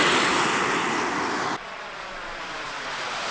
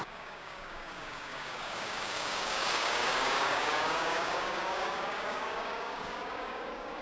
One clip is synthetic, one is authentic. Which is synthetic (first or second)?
second